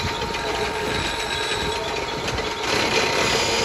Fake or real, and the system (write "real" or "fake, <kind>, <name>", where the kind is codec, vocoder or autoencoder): real